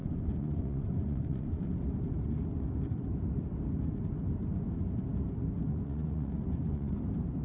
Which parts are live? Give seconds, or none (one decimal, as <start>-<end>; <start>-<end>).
1.6-5.7; 7.0-7.4